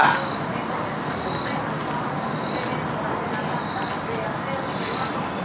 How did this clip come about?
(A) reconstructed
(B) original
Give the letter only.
B